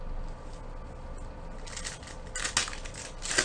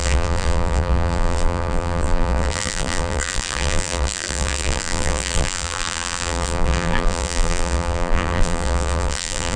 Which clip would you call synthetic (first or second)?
second